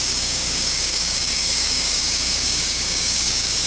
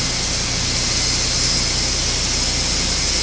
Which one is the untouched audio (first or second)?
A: second